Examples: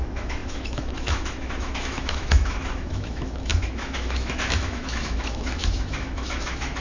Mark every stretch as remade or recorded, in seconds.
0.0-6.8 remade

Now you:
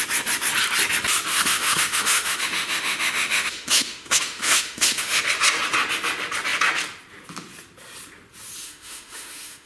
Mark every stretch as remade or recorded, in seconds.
0.0-1.3 recorded; 1.3-5.2 remade; 5.2-8.6 recorded; 8.6-9.7 remade

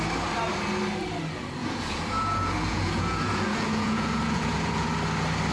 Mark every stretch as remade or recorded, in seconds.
0.0-1.6 recorded; 1.6-4.9 remade; 4.9-5.5 recorded

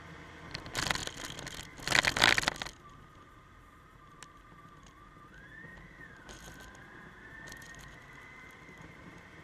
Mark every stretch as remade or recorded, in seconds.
0.0-5.7 recorded; 5.7-9.4 remade

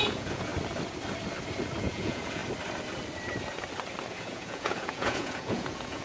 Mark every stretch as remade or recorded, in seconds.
0.0-0.5 remade; 0.5-1.8 recorded; 1.8-2.4 remade; 2.4-4.1 recorded; 4.1-6.0 remade

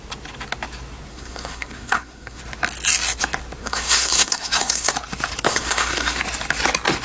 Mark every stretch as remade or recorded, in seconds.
0.0-1.1 recorded; 1.1-2.4 remade; 2.4-3.6 recorded; 3.6-4.9 remade; 4.9-5.5 recorded; 5.5-6.2 remade; 6.2-7.0 recorded